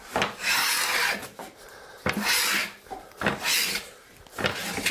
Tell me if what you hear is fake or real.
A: real